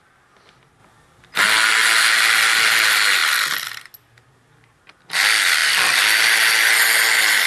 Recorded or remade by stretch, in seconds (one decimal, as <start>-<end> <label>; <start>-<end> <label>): 0.0-7.5 recorded